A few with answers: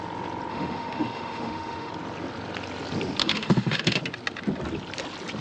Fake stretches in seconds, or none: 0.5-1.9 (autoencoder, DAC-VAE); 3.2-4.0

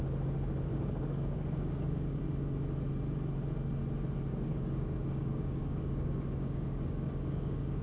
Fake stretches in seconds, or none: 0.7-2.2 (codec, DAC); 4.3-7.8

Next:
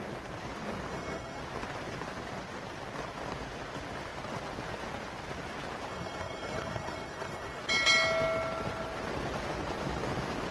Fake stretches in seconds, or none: 0.9-1.4 (codec, SNAC); 5.9-7.6

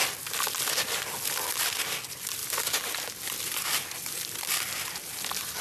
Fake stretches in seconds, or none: none

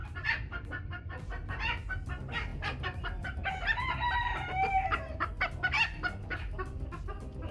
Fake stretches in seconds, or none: none

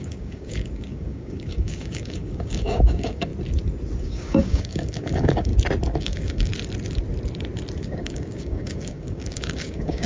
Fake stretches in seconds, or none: 0.0-3.3 (codec, DAC); 4.0-5.5; 6.0-6.5; 7.8-10.1

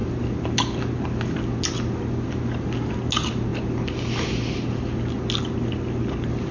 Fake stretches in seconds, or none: none